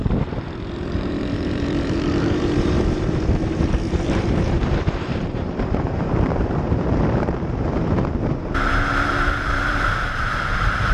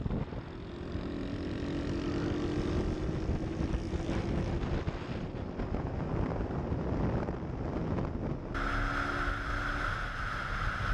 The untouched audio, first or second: second